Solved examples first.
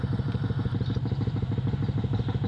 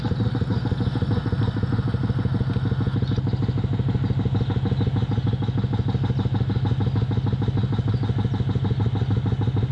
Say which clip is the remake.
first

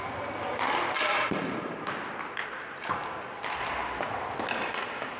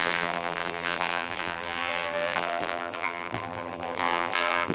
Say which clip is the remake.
second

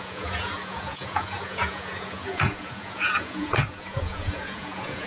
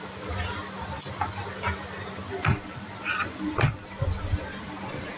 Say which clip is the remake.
first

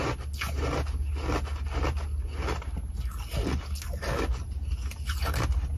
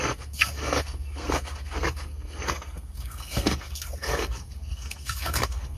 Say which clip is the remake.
second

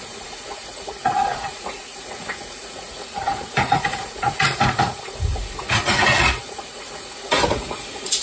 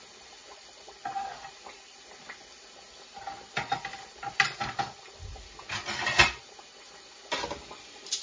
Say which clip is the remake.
first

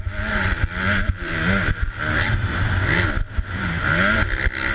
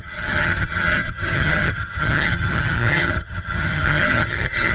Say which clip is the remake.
second